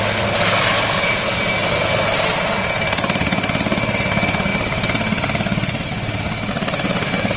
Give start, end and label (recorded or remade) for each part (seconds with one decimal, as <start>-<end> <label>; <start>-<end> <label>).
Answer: 0.0-7.4 recorded